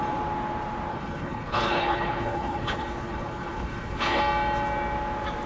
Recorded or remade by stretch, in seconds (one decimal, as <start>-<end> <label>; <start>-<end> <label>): 0.0-0.9 recorded; 0.9-4.2 remade; 4.2-5.5 recorded

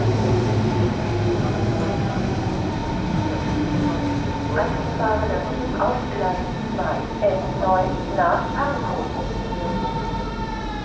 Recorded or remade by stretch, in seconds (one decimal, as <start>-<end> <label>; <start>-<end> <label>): 0.0-8.7 recorded; 8.7-9.2 remade; 9.2-10.8 recorded

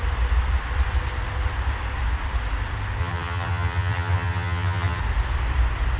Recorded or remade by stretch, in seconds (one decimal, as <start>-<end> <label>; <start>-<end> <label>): 0.0-3.0 recorded; 3.0-5.0 remade; 5.0-6.0 recorded